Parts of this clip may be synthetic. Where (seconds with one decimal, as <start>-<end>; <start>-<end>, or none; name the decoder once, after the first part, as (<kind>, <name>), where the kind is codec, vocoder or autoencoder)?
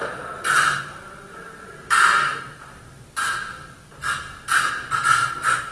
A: none